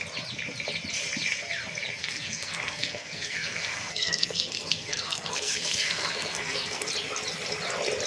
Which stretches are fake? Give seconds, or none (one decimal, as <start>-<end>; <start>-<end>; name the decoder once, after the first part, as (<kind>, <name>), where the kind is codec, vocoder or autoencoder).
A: 2.0-6.9 (codec, SNAC)